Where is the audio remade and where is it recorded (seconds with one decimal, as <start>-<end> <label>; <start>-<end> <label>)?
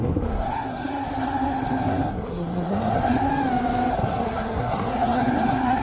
0.0-3.3 remade; 3.3-3.9 recorded; 3.9-5.8 remade